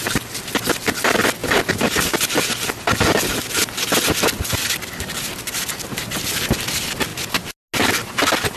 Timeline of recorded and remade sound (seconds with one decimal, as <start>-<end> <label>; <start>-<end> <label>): 0.0-8.6 recorded